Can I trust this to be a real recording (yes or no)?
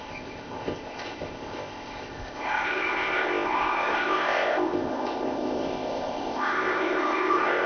no